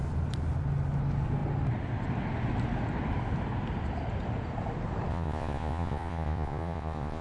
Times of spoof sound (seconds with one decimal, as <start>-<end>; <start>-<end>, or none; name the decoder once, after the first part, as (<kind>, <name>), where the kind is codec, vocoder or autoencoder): 5.1-7.2 (vocoder, Vocos)